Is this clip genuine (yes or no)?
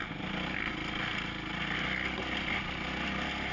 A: yes